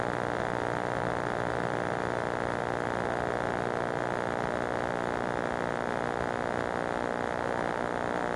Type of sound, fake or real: real